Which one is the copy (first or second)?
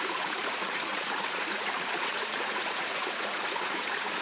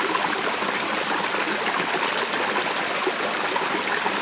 first